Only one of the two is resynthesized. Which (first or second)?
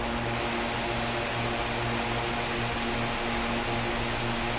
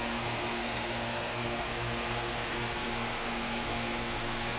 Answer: second